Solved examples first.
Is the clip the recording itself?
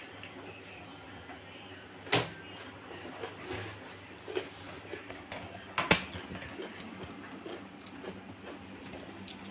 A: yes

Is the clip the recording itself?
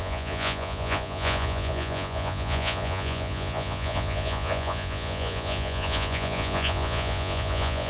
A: no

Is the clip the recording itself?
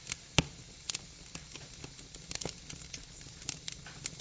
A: yes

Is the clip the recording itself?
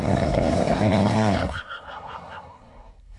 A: no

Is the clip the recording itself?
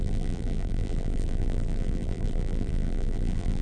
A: no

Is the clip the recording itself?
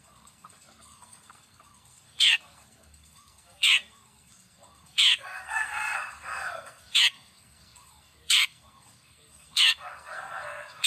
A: no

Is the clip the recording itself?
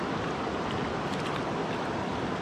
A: yes